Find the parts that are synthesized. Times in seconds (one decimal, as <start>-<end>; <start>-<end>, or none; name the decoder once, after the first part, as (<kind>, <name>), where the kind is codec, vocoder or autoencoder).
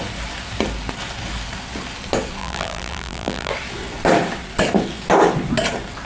2.4-3.5 (vocoder, BigVGAN v2)